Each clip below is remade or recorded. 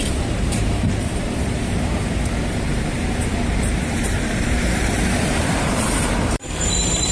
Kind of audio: remade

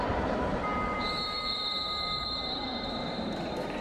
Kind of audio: remade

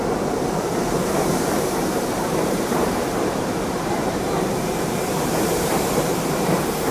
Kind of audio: remade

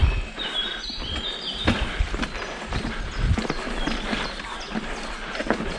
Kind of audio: recorded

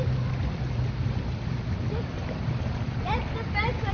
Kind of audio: remade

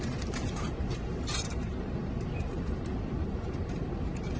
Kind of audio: remade